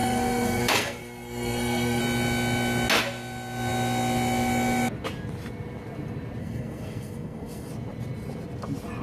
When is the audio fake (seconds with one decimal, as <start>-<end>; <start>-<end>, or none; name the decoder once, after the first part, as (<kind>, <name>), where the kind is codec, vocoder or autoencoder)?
0.0-2.0 (codec, SNAC); 6.4-7.7